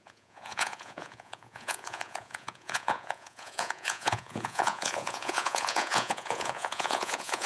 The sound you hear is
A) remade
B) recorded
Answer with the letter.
A